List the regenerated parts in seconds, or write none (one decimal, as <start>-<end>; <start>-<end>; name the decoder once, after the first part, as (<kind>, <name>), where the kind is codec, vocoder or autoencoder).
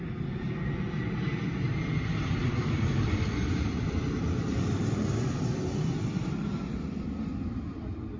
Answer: 2.4-7.3 (vocoder, BigVGAN v2)